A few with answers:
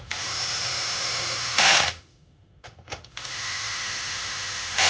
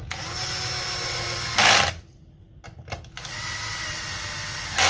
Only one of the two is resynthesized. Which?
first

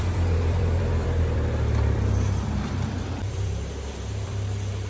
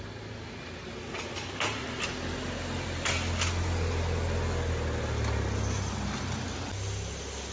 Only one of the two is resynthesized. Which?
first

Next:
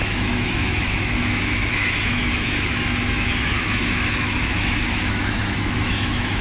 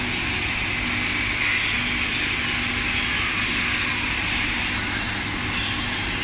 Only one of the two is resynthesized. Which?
first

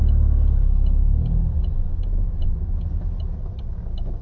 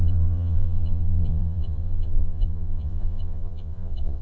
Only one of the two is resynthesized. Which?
second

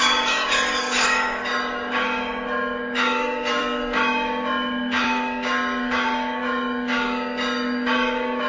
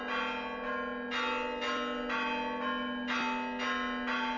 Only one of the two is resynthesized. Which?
first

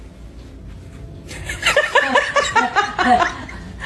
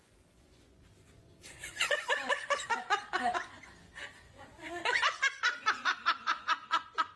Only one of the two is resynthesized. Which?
second